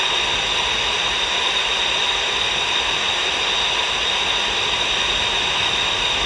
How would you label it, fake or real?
fake